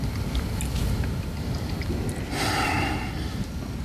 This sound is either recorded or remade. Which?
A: recorded